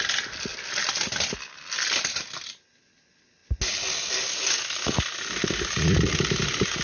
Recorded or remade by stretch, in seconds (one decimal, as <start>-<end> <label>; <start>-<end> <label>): 0.0-6.8 recorded